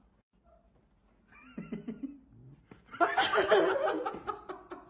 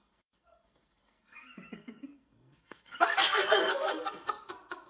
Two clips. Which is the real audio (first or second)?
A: first